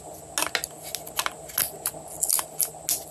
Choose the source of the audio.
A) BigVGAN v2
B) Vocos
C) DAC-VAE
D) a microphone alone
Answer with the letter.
D